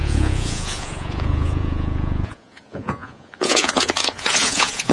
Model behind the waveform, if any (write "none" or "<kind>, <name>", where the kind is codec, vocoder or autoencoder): vocoder, Vocos